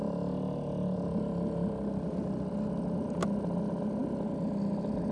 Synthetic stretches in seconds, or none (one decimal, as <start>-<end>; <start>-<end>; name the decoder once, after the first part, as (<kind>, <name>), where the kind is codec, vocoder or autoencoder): none